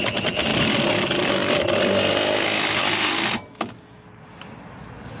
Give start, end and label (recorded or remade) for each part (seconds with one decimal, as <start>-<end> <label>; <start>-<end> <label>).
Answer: 0.0-5.2 recorded